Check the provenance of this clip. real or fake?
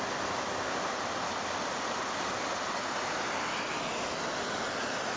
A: real